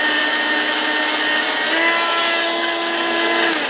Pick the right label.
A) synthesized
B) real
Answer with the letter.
B